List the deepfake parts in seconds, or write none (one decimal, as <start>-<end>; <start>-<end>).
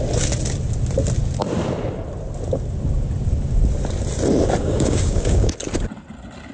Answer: 4.6-5.5